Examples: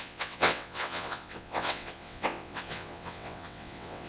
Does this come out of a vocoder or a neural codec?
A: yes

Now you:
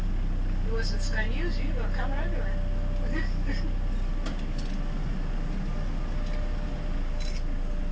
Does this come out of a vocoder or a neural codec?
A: no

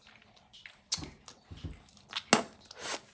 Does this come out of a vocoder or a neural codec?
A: no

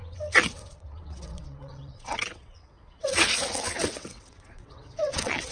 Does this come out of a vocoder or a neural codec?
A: yes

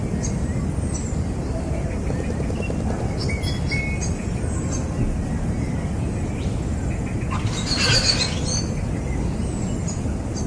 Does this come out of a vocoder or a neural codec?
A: no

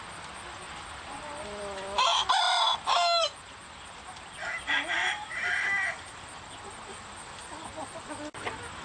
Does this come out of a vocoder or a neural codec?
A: no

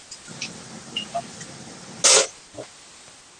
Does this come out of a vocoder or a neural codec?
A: no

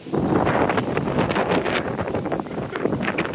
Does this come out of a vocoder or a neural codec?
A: no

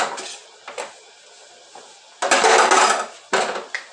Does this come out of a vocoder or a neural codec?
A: no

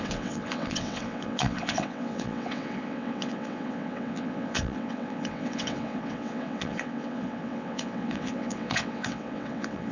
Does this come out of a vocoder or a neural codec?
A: yes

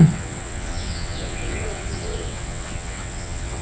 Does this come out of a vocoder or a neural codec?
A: yes